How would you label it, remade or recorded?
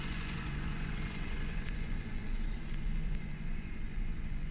remade